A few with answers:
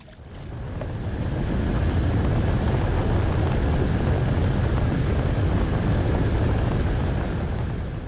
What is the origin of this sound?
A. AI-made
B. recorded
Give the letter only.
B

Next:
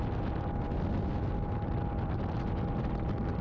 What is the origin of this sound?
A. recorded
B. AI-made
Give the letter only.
A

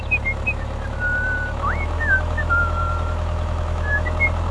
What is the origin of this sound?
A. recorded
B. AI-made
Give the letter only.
B